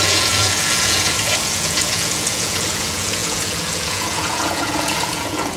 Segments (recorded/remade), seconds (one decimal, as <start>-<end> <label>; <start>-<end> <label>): 0.0-5.6 remade